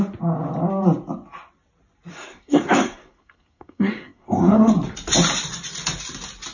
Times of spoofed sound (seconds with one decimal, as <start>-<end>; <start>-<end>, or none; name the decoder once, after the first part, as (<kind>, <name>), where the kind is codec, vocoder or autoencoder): 2.1-4.7 (codec, SNAC)